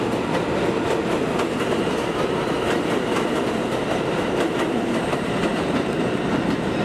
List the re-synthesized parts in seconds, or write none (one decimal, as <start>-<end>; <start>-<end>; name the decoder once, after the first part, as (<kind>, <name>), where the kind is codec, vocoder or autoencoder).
none